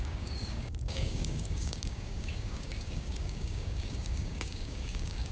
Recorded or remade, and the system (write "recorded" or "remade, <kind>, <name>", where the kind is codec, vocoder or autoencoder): remade, codec, DAC